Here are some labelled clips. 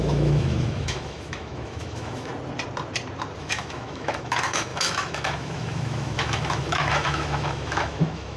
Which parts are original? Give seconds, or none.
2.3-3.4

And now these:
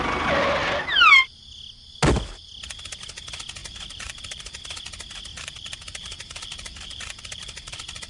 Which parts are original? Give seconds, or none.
0.0-3.6; 4.4-5.3

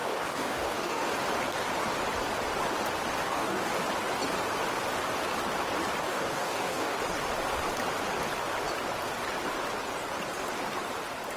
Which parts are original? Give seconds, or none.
1.1-3.2; 3.7-6.0; 7.0-11.4

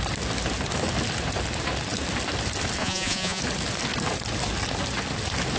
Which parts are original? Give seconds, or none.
0.0-2.8; 3.4-5.6

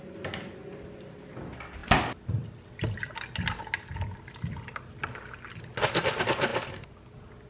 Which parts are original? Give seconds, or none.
0.0-7.5

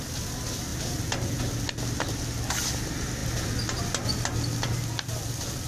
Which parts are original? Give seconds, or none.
0.0-0.7; 1.4-5.7

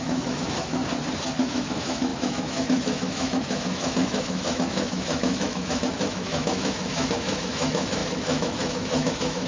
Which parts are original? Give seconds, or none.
0.8-1.4

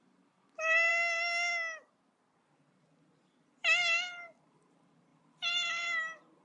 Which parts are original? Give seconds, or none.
0.9-2.4